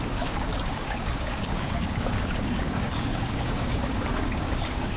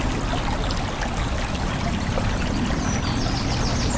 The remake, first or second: first